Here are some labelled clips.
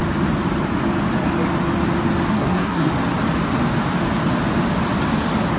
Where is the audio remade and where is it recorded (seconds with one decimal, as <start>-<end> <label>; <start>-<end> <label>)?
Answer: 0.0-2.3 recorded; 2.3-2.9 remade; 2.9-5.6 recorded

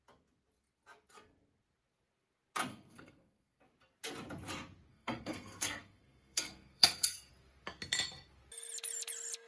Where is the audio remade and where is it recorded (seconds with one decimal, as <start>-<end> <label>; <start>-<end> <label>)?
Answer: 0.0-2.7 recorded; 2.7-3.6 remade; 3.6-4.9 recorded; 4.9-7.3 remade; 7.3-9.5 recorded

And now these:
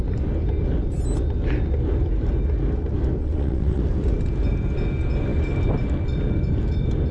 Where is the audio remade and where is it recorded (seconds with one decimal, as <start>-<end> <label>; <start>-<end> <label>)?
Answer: 0.0-3.2 recorded; 3.2-3.8 remade; 3.8-7.1 recorded